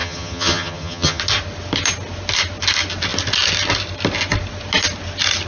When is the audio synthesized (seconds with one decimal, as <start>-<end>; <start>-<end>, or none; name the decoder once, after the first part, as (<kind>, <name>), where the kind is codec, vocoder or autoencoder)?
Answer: 0.0-1.2 (vocoder, HiFi-GAN)